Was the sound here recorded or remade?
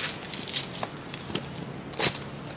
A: recorded